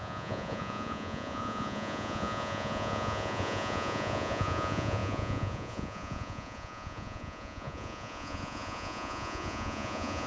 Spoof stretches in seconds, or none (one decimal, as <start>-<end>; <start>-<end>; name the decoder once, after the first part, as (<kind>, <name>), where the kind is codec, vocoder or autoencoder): 0.0-10.3 (vocoder, Vocos)